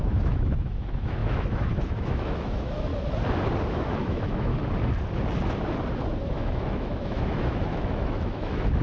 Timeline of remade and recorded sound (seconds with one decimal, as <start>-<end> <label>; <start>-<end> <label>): 0.0-2.9 remade; 2.9-3.7 recorded; 3.7-4.5 remade; 4.5-6.3 recorded; 6.3-8.8 remade

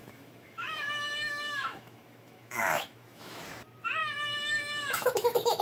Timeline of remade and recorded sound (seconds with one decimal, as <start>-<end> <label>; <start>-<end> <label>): 0.0-3.4 remade; 3.4-4.0 recorded; 4.0-5.6 remade

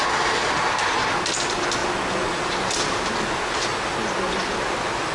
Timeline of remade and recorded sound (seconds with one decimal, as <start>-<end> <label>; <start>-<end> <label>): 0.0-5.1 recorded

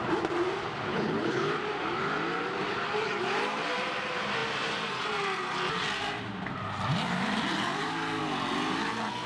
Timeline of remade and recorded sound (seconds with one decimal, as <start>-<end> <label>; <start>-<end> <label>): 0.0-0.9 recorded; 0.9-1.5 remade; 1.5-9.3 recorded

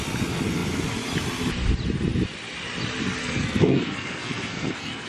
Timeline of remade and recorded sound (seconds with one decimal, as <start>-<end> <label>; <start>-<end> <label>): 0.0-3.2 recorded; 3.2-5.1 remade

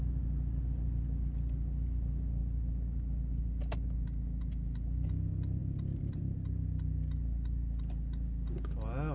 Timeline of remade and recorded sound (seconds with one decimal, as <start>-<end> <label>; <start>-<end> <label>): 0.0-5.6 recorded; 5.6-6.2 remade; 6.2-9.1 recorded

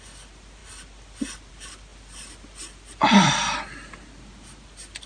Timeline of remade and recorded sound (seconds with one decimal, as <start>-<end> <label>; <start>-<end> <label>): 0.0-5.1 recorded